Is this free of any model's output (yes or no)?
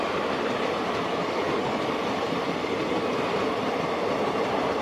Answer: no